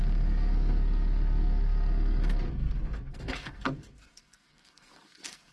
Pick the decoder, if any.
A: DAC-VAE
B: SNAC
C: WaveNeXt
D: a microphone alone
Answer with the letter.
B